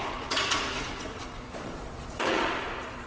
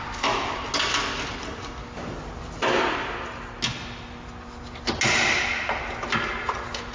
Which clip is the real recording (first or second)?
second